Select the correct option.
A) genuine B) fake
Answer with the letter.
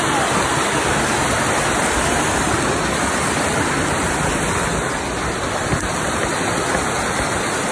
A